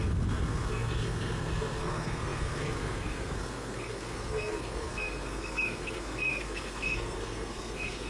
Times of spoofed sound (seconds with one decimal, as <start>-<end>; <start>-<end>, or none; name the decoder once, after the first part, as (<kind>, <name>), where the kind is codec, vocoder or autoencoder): 0.0-8.1 (codec, SNAC)